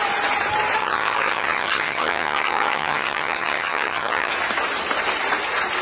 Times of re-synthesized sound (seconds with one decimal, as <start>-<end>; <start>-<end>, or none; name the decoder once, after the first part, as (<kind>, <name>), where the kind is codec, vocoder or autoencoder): 0.8-4.3 (vocoder, HiFi-GAN)